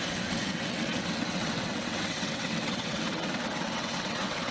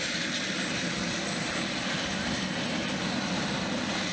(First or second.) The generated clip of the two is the first